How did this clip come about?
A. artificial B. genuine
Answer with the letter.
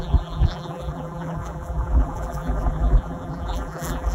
A